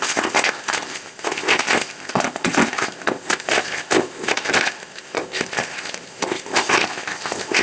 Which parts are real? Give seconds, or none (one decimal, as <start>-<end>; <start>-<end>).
none